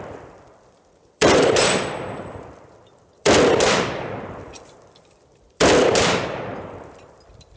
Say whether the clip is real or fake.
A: fake